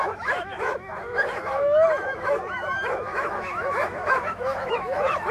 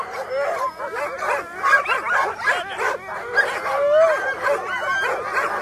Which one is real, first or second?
second